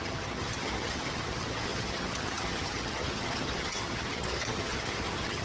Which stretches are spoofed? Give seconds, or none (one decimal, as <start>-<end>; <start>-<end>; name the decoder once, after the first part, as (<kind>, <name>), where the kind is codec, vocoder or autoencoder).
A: 0.0-5.4 (vocoder, HiFi-GAN)